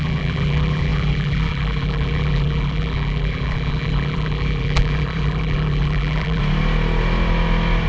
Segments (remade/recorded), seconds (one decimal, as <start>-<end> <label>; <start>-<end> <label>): 0.0-6.4 remade; 6.4-7.9 recorded